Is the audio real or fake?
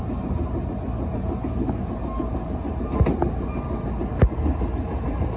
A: real